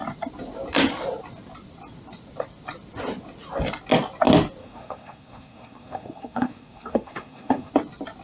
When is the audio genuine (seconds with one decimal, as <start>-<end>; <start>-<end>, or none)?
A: 0.0-4.6; 7.7-8.2